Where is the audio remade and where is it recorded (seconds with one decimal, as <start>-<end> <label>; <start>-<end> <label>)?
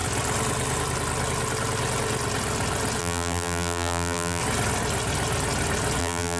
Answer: 0.0-3.0 recorded; 3.0-4.4 remade; 4.4-6.0 recorded; 6.0-6.4 remade